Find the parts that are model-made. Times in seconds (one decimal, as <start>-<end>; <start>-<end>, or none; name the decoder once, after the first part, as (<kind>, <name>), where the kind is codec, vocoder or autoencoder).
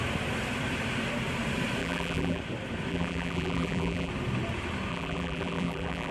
1.8-2.4 (vocoder, BigVGAN v2); 2.9-4.1; 4.9-6.1